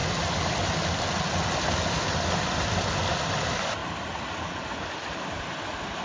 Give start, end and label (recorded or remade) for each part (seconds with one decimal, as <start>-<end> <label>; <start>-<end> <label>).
0.0-6.0 recorded